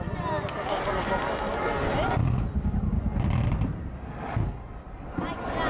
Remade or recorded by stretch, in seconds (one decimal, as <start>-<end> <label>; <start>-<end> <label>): 0.0-5.7 recorded